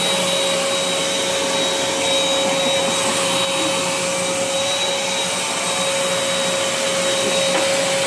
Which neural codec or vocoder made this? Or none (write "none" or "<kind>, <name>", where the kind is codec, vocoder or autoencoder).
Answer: none